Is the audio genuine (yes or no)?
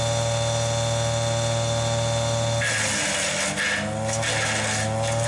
yes